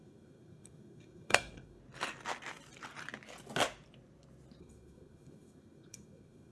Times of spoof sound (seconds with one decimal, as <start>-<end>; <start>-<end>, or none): 0.0-1.8; 4.6-6.5